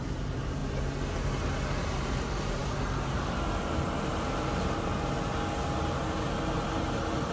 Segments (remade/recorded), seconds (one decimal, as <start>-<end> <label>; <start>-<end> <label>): 0.0-0.6 remade; 0.6-1.7 recorded; 1.7-4.9 remade; 4.9-6.6 recorded; 6.6-7.3 remade